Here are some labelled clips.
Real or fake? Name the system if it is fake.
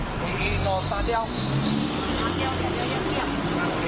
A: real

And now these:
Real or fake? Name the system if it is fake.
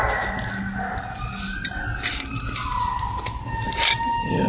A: real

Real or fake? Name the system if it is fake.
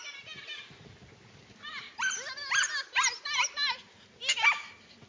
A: real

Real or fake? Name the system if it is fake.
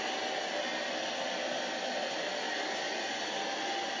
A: real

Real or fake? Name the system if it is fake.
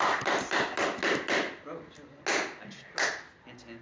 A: real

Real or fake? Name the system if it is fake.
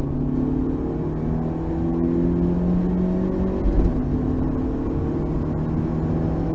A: real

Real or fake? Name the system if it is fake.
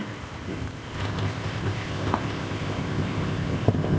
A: fake, codec, ZipCodec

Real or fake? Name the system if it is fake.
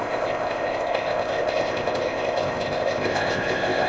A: fake, codec, ZipCodec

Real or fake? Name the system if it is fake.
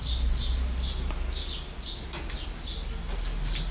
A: real